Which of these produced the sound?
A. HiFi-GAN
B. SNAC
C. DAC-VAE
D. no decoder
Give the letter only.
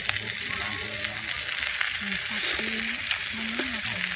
D